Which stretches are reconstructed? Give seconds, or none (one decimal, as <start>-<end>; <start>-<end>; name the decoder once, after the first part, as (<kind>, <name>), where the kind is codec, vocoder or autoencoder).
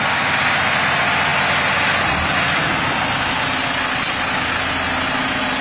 none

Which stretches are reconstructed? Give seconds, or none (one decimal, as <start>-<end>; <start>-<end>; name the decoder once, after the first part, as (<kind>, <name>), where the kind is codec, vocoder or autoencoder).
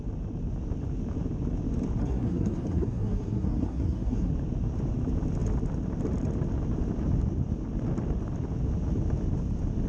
2.0-4.3 (codec, SNAC)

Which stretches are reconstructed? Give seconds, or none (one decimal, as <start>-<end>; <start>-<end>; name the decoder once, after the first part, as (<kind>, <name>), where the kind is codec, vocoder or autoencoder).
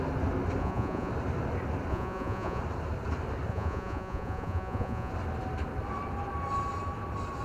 0.6-1.1 (vocoder, Vocos); 1.9-2.6; 3.5-5.1